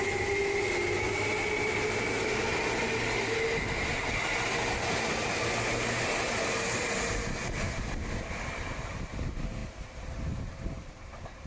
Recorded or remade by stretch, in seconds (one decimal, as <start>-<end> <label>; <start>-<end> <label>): 0.0-11.5 recorded